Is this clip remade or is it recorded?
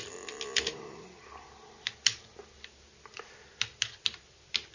recorded